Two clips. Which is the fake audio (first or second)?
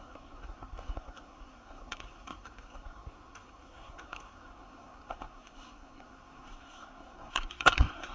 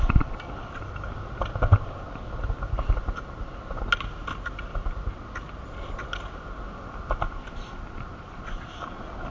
first